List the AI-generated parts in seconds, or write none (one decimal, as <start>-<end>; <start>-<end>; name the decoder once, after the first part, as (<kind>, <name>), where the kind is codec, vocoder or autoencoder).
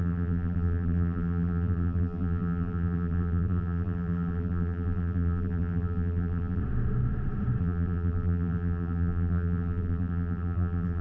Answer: 0.0-6.6 (vocoder, BigVGAN v2); 7.6-11.0